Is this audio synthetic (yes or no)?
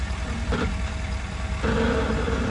yes